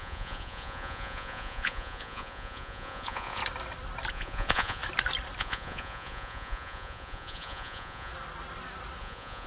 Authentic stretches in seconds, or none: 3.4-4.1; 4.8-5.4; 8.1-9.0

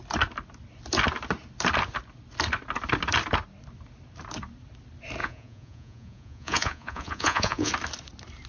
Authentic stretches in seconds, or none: 0.0-5.2; 7.7-8.5

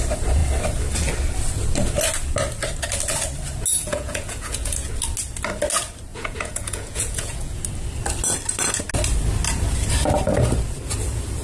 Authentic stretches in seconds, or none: 0.0-3.7; 4.9-6.1; 7.6-11.4

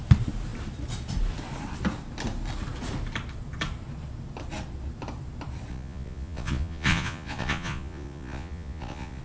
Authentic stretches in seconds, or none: 0.0-5.7